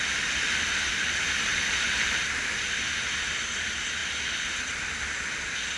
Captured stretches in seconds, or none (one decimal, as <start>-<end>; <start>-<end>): 0.0-1.5; 2.7-5.8